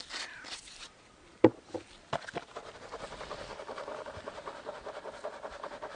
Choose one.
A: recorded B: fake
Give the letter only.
A